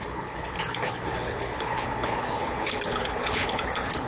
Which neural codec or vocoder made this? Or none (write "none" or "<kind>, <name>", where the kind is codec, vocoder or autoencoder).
codec, HILCodec